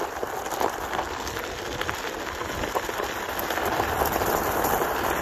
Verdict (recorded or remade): recorded